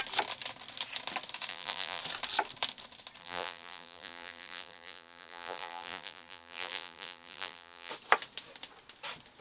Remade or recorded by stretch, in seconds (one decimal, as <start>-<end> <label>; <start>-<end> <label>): 0.0-1.5 recorded; 1.5-2.0 remade; 2.0-3.2 recorded; 3.2-7.9 remade; 7.9-9.4 recorded